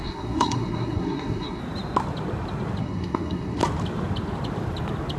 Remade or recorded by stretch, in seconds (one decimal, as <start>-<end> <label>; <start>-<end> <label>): 0.0-1.6 remade; 1.6-2.8 recorded; 2.8-3.6 remade; 3.6-5.2 recorded